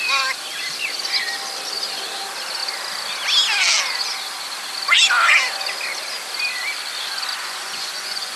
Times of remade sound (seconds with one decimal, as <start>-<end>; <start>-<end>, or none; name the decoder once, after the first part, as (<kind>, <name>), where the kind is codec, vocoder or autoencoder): 7.3-8.4 (vocoder, Vocos)